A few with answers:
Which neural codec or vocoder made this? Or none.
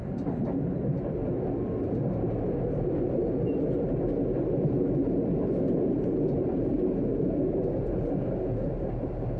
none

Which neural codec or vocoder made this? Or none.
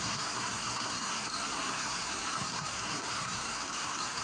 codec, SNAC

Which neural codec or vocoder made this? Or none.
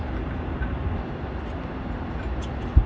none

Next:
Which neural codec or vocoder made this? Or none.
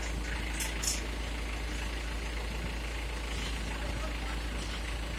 none